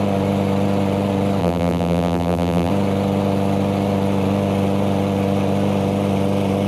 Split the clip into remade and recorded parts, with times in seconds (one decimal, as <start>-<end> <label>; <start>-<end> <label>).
0.0-1.4 recorded; 1.4-2.7 remade; 2.7-6.7 recorded